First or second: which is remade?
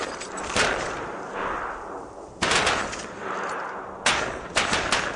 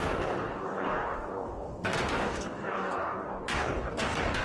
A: second